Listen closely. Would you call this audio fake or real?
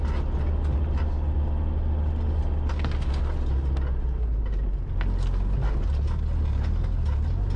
real